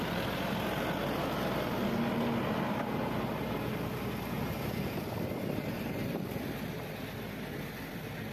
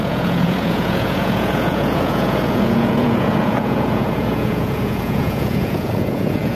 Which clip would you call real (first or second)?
first